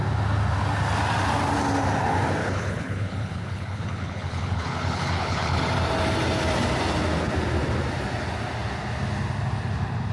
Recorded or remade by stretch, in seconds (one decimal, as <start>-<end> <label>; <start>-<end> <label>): 0.0-2.4 recorded; 2.4-5.6 remade; 5.6-10.1 recorded